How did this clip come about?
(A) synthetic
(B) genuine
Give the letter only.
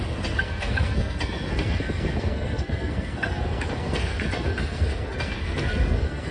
A